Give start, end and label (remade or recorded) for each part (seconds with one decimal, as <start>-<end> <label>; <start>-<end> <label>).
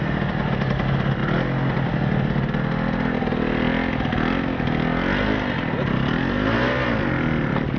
0.0-7.8 recorded